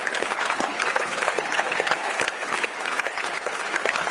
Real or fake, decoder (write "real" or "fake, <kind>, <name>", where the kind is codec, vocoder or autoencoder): fake, codec, HILCodec